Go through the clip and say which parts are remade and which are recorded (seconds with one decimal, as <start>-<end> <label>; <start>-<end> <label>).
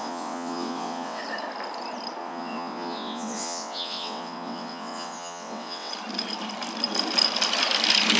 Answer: 0.0-1.2 remade; 1.2-2.2 recorded; 2.2-5.9 remade; 5.9-8.2 recorded